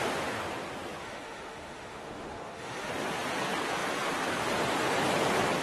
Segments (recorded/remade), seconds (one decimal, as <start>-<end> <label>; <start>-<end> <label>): 0.0-1.0 recorded; 1.0-2.9 remade; 2.9-5.6 recorded